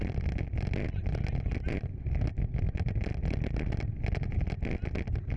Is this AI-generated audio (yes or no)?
no